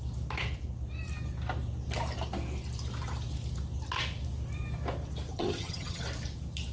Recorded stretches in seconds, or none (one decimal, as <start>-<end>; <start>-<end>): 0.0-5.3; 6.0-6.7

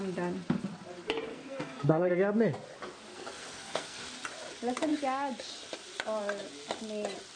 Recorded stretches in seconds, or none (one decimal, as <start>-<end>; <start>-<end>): 0.0-1.3; 2.1-3.1; 4.0-7.4

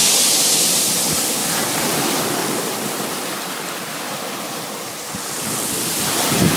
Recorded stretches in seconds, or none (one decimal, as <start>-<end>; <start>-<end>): 0.8-2.4; 5.2-6.6

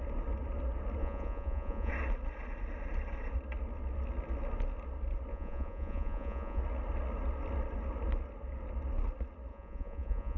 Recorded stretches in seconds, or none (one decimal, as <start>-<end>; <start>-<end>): 0.0-1.0; 1.9-5.3; 6.6-9.5